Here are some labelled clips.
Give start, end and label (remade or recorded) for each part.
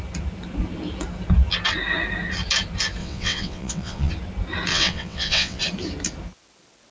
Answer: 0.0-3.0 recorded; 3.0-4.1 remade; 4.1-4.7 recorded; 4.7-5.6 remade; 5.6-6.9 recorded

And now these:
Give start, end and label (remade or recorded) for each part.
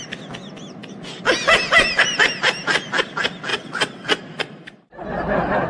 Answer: 0.0-3.5 recorded; 3.5-4.2 remade; 4.2-5.7 recorded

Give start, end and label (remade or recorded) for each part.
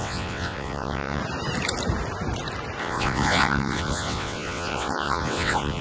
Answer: 0.0-1.2 remade; 1.2-2.8 recorded; 2.8-5.8 remade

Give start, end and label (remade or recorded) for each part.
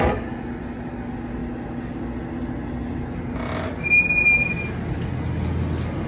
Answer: 0.0-6.1 recorded